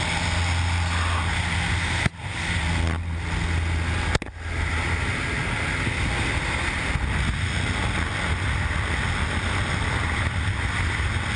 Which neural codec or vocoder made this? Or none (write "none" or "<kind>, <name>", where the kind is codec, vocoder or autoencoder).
none